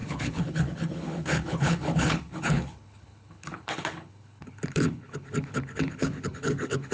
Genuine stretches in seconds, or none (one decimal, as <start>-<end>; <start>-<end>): none